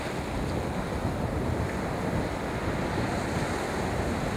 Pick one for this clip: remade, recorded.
recorded